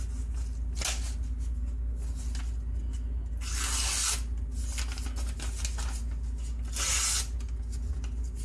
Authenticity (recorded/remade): recorded